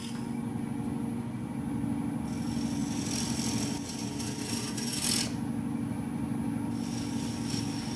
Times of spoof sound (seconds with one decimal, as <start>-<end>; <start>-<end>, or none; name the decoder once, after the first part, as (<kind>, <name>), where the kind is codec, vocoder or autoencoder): none